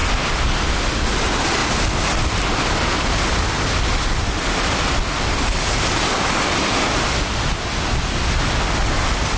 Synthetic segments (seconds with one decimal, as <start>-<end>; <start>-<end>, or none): none